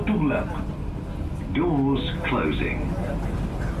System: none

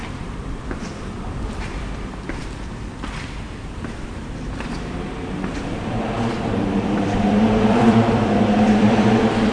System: vocoder, BigVGAN v2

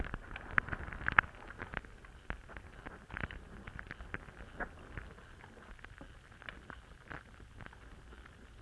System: none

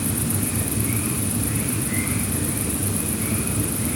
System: vocoder, BigVGAN v2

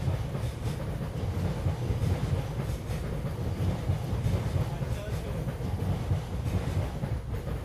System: none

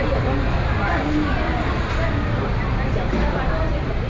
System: none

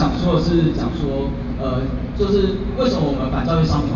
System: none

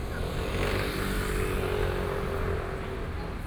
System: none